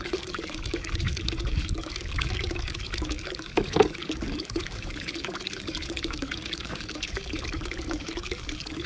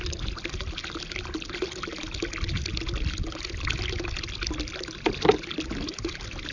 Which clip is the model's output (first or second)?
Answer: first